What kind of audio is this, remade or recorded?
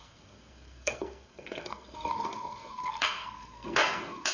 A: remade